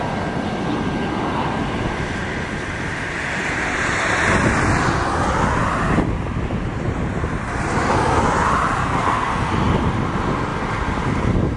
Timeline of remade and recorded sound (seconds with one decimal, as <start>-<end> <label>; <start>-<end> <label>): 0.0-8.8 recorded; 8.8-9.5 remade; 9.5-11.6 recorded